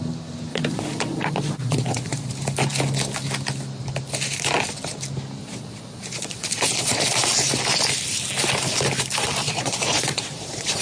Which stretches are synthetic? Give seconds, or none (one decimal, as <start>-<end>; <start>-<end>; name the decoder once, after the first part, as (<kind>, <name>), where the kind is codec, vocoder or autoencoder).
0.5-2.3 (vocoder, Vocos); 5.4-7.0; 9.4-10.8